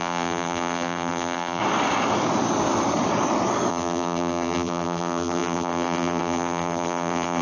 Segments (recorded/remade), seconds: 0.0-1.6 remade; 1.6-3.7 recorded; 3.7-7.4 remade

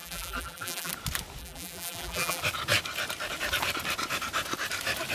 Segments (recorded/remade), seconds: 0.0-0.9 remade; 0.9-1.4 recorded; 1.4-2.4 remade; 2.4-5.1 recorded

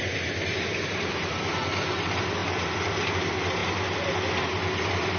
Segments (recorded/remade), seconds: 0.0-2.4 recorded; 2.4-3.1 remade; 3.1-5.2 recorded

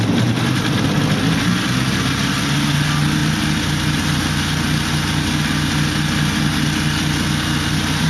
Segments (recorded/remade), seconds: 0.0-3.2 recorded; 3.2-3.8 remade; 3.8-8.1 recorded

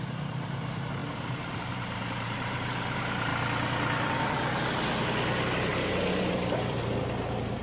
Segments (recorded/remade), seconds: 0.0-3.3 remade; 3.3-6.1 recorded; 6.1-7.6 remade

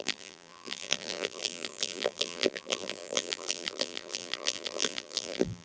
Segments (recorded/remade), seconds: 0.0-5.6 remade

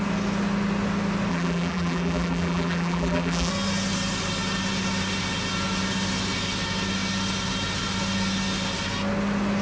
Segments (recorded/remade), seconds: 0.0-1.3 recorded; 1.3-3.5 remade; 3.5-9.6 recorded

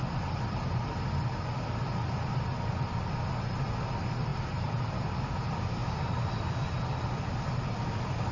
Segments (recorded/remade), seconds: 0.0-4.3 recorded; 4.3-4.8 remade; 4.8-8.3 recorded